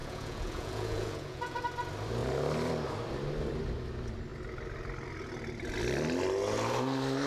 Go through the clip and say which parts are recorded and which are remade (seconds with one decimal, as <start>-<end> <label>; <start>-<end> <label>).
0.0-1.6 remade; 1.6-7.3 recorded